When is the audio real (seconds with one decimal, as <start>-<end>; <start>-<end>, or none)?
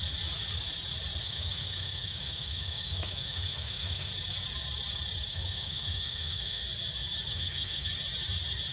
0.0-1.2; 4.1-5.3; 6.6-7.3; 7.9-8.7